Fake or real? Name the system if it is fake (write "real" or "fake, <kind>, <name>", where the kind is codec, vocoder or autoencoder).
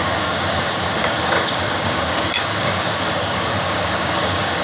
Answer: fake, codec, DAC